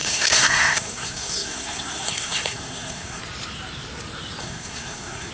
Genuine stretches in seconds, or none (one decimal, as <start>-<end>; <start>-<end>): 3.2-4.4